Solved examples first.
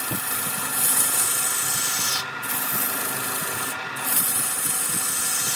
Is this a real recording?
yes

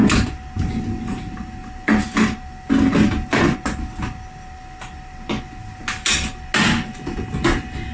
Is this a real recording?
yes